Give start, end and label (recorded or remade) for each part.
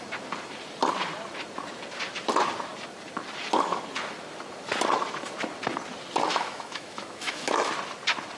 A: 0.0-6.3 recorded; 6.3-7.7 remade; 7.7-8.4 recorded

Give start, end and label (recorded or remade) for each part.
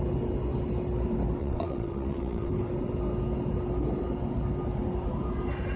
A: 0.0-1.4 recorded; 1.4-2.5 remade; 2.5-5.8 recorded